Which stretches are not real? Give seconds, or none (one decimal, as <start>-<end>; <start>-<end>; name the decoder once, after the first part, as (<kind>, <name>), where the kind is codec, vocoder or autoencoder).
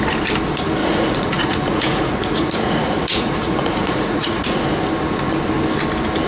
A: 0.8-4.6 (vocoder, Vocos)